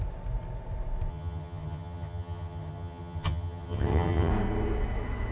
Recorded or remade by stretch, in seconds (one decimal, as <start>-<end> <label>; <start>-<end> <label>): 0.0-1.1 recorded; 1.1-4.3 remade; 4.3-5.3 recorded